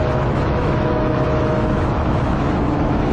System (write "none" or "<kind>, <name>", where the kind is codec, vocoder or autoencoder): autoencoder, DAC-VAE